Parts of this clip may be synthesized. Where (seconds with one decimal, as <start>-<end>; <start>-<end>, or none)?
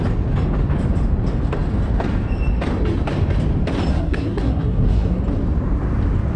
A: 3.9-5.2